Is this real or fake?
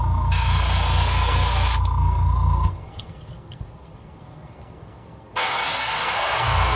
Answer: fake